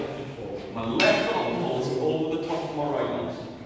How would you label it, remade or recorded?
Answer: recorded